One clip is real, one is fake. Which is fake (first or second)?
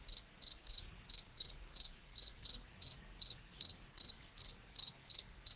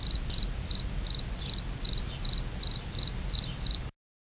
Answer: first